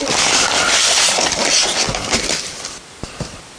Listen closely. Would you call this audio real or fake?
fake